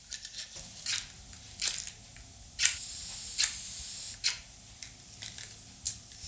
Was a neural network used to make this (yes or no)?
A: no